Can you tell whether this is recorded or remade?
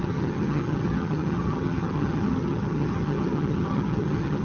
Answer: remade